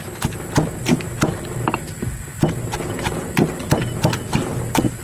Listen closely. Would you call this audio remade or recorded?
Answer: recorded